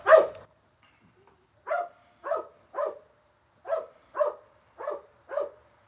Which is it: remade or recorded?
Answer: recorded